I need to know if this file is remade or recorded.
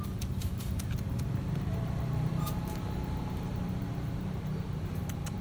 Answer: remade